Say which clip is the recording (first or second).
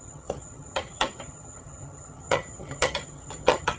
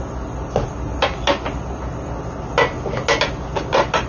second